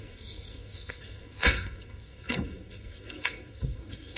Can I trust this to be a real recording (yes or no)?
no